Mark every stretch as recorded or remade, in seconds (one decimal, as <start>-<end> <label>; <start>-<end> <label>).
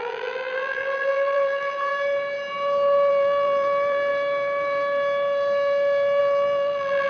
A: 0.0-1.9 remade; 1.9-3.1 recorded; 3.1-4.1 remade; 4.1-6.2 recorded; 6.2-7.1 remade